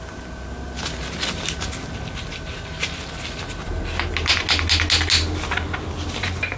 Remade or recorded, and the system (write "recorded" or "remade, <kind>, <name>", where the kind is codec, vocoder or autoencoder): recorded